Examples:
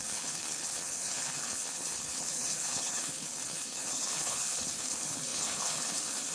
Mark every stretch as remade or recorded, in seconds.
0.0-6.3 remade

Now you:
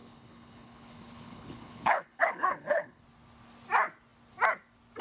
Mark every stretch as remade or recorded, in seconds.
0.0-3.0 remade; 3.0-5.0 recorded